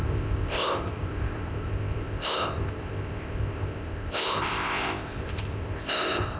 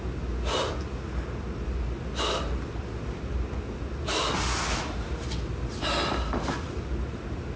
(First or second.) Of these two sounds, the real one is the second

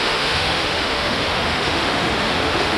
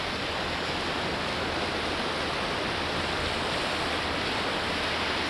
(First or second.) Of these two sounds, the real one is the second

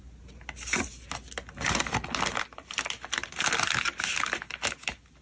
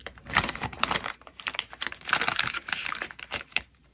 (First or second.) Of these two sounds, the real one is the first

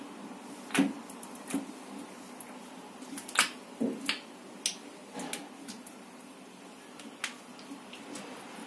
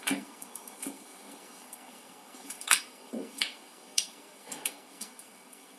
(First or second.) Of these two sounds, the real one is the first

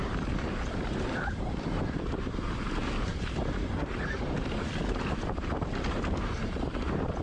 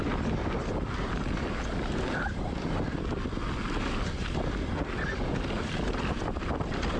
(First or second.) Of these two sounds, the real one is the second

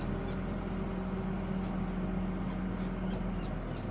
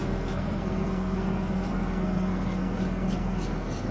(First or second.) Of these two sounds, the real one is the first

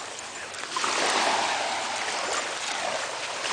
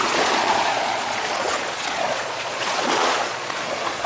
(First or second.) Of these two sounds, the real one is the first